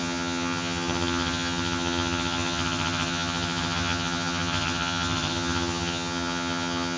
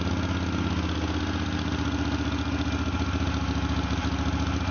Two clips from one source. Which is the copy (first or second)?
first